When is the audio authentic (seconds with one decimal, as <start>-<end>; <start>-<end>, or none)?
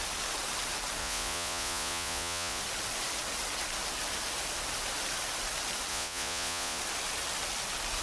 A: 0.0-1.0; 2.6-5.9; 6.8-8.0